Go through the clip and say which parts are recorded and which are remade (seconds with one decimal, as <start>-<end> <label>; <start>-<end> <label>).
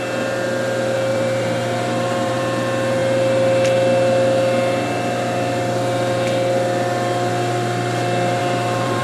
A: 0.0-1.1 recorded; 1.1-2.4 remade; 2.4-8.4 recorded; 8.4-9.0 remade